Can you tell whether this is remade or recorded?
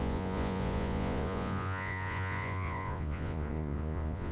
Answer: remade